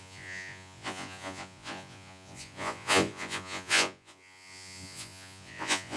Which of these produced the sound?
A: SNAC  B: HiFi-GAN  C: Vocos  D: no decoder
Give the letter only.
C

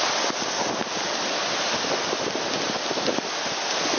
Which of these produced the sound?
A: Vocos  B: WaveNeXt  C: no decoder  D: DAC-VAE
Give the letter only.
C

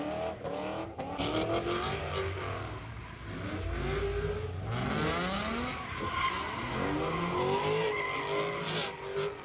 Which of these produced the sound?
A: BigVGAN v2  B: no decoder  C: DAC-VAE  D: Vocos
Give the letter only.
B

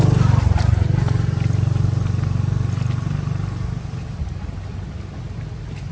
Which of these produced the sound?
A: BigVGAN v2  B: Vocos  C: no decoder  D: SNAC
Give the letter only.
C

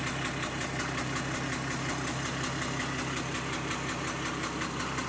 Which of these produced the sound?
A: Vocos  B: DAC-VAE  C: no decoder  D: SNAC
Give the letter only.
C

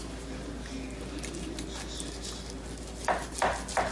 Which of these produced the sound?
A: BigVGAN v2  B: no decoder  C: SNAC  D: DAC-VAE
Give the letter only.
B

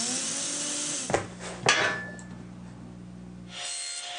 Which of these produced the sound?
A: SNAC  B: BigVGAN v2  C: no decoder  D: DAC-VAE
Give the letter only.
C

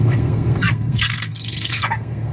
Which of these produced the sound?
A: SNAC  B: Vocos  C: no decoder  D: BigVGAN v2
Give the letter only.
A